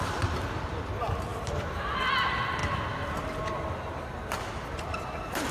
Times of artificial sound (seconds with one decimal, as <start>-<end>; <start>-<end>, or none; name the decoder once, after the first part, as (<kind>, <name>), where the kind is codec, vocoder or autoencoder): 1.3-2.0 (vocoder, BigVGAN v2)